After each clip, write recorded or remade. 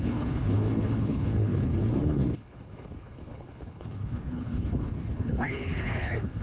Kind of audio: remade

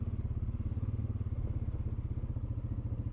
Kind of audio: recorded